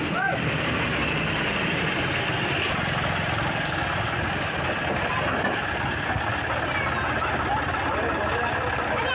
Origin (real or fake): real